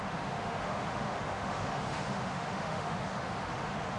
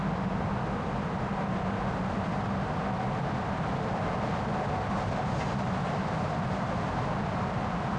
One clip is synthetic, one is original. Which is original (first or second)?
second